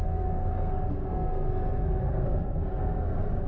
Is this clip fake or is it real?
fake